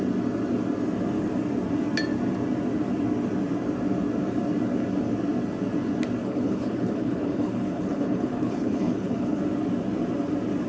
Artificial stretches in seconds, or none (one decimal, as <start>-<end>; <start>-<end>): 6.2-9.4